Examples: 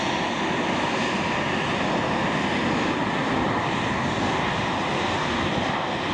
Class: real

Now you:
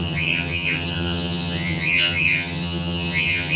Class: fake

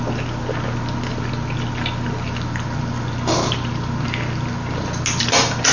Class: real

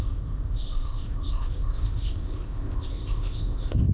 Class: fake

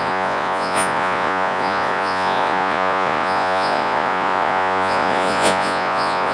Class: fake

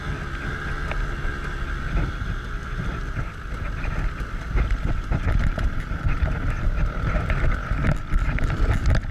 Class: real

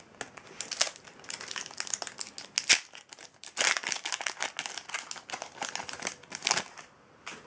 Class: real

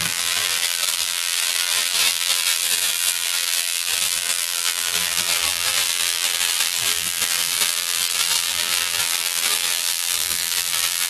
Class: fake